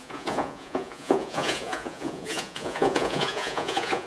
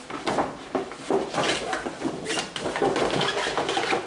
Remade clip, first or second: first